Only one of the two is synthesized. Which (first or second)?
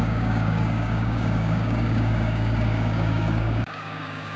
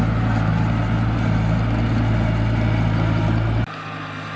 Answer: first